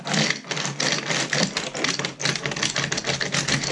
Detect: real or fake real